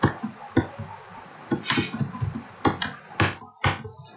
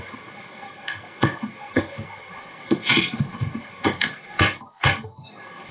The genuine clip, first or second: first